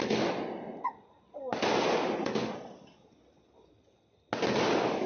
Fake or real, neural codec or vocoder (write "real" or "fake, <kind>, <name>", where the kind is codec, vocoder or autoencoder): real